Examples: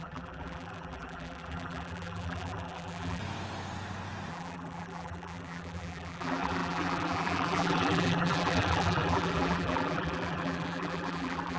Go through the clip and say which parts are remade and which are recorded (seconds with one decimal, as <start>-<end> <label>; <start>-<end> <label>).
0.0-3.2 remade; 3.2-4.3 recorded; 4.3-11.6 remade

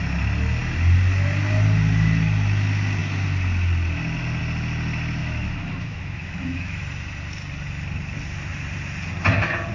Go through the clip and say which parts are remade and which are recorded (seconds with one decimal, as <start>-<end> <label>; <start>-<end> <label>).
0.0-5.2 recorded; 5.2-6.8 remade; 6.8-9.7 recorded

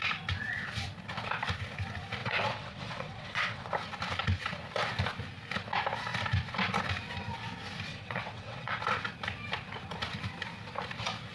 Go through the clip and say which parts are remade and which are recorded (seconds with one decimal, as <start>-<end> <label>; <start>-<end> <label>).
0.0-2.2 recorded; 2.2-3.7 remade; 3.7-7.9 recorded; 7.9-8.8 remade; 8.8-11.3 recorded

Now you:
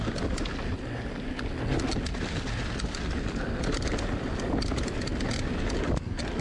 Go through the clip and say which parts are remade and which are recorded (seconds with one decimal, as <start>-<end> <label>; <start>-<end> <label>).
0.0-6.4 recorded